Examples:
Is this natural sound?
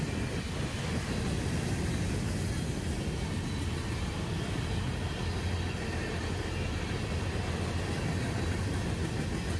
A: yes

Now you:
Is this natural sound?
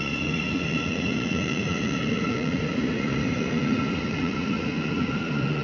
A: no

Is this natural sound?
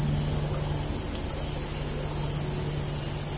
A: yes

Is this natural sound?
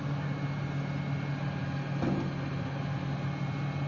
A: yes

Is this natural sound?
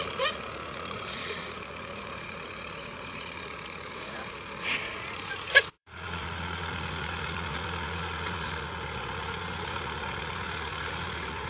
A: no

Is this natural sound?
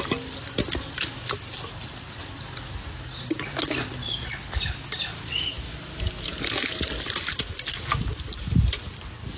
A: yes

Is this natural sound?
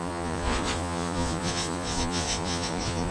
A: no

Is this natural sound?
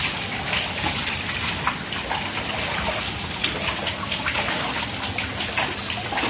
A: yes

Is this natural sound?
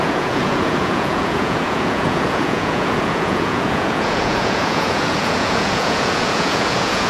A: no